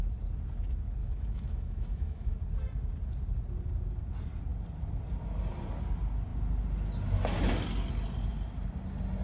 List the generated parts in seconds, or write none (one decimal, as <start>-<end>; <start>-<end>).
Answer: 1.0-2.3